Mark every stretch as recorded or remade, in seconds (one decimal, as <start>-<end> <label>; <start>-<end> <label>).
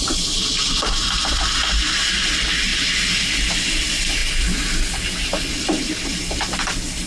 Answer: 0.0-7.1 recorded